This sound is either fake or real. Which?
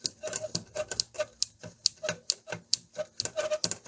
real